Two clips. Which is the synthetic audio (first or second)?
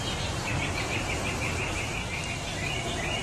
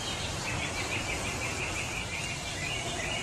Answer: second